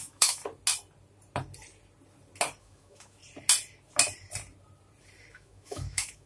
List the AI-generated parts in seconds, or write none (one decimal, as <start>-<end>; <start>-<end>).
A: 0.0-0.4; 2.6-3.2; 5.3-6.3